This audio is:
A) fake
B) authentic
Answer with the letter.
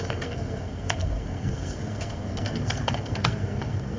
A